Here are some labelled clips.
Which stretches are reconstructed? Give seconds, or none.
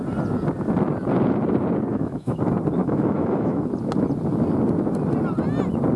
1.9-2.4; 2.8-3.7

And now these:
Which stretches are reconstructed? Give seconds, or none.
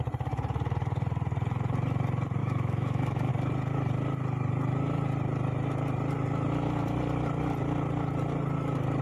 2.4-3.3